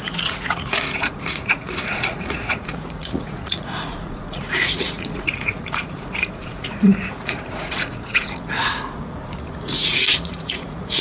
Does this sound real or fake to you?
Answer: fake